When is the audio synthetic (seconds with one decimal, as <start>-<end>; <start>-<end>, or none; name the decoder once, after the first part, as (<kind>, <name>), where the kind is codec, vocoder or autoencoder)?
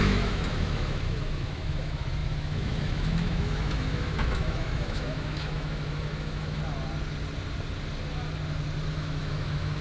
0.0-6.6 (autoencoder, DAC-VAE); 8.9-9.8